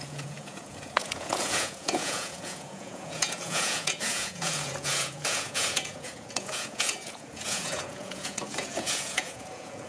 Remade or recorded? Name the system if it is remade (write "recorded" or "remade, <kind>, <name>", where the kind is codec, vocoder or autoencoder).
remade, vocoder, Vocos